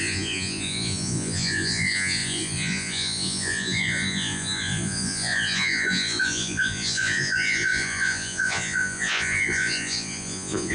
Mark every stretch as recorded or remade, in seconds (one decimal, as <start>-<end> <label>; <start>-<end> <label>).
0.0-10.7 remade

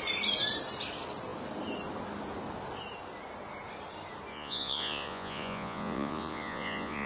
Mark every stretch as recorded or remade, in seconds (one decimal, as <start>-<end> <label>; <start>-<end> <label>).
0.0-4.3 recorded; 4.3-7.1 remade

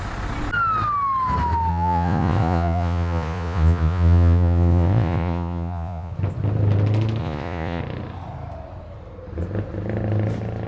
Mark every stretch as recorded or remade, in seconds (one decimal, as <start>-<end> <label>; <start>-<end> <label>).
0.0-1.7 recorded; 1.7-6.1 remade; 6.1-7.2 recorded; 7.2-7.8 remade; 7.8-10.7 recorded

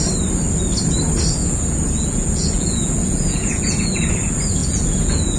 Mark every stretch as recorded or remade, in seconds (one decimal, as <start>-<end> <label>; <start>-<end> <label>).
0.0-1.4 recorded; 1.4-4.1 remade; 4.1-4.6 recorded; 4.6-5.4 remade